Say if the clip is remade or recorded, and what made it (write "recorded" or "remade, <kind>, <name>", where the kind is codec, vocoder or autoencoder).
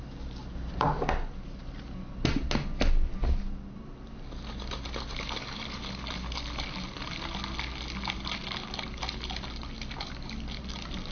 recorded